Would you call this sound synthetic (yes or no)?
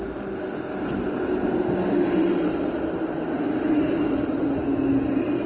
no